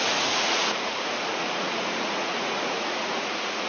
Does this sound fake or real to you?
fake